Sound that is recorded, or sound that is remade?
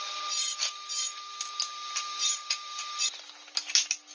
recorded